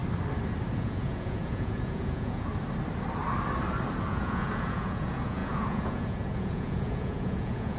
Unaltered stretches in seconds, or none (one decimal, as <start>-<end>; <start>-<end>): 0.0-0.8; 2.5-4.1